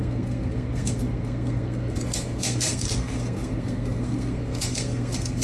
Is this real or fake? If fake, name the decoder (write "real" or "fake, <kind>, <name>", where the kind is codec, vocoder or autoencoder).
fake, codec, SNAC